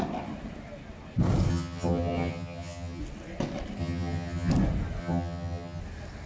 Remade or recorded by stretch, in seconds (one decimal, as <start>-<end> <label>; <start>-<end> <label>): 0.0-1.5 recorded; 1.5-3.0 remade; 3.0-3.8 recorded; 3.8-4.5 remade; 4.5-5.0 recorded; 5.0-5.8 remade; 5.8-6.3 recorded